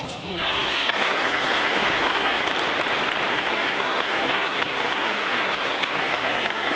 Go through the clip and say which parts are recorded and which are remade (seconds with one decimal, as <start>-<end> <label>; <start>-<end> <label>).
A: 0.0-2.5 remade; 2.5-3.3 recorded; 3.3-6.8 remade